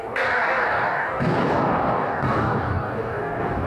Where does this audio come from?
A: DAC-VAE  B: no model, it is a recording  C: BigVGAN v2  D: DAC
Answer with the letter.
D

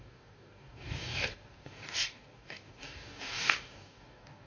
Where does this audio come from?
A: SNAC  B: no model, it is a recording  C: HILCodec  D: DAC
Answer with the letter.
D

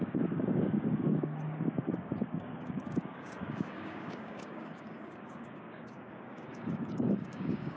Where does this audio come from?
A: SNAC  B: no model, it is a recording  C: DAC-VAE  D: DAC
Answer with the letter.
D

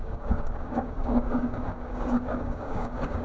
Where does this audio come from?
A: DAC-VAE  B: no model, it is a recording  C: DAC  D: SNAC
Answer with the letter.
C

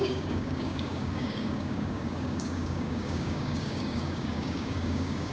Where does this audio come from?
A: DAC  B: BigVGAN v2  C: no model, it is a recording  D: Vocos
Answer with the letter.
A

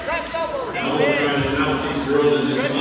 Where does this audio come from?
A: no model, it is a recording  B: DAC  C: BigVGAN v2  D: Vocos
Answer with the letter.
A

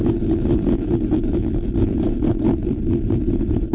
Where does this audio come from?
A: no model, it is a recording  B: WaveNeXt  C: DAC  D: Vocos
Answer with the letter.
A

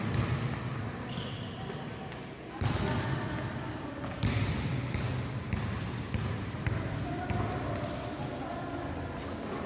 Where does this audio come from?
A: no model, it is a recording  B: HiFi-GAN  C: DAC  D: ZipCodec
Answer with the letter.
A